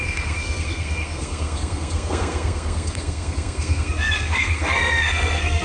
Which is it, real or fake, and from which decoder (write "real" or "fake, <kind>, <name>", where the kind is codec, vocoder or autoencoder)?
fake, codec, SNAC